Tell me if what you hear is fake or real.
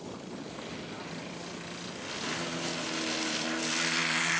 real